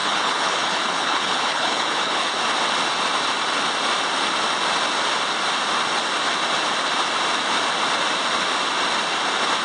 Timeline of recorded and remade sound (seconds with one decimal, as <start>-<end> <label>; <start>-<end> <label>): 0.0-2.3 remade; 2.3-9.6 recorded